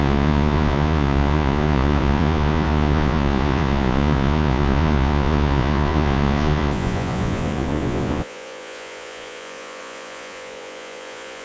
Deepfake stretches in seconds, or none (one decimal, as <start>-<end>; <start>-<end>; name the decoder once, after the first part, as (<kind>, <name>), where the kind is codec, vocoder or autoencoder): 0.0-11.4 (vocoder, Vocos)